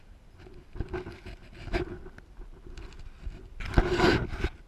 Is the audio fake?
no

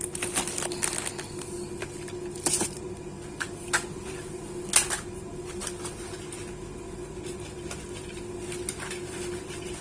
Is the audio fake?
no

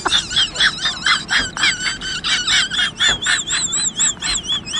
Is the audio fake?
no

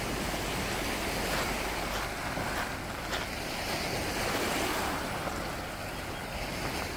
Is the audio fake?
no